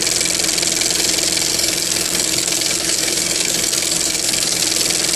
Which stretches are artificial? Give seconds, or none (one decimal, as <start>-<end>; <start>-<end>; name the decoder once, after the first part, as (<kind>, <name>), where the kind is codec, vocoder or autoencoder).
1.5-4.6 (codec, DAC)